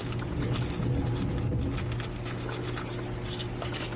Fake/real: real